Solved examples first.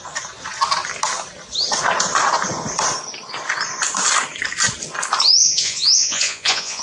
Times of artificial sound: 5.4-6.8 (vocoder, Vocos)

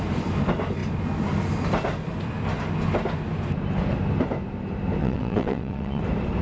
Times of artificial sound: 5.0-6.0 (vocoder, WaveNeXt)

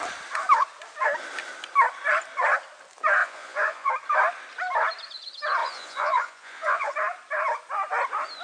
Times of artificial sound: 3.2-3.9 (vocoder, Vocos); 5.6-6.9